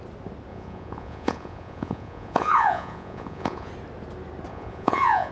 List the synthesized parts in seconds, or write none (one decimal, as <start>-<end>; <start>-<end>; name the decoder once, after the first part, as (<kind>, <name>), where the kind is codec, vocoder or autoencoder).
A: 0.5-3.7 (vocoder, Vocos); 4.5-5.3